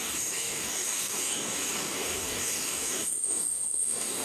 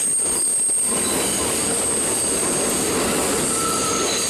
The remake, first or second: first